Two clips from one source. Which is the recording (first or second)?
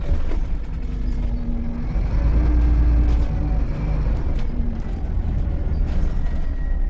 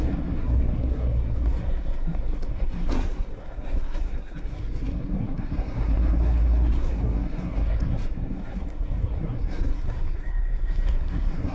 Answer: first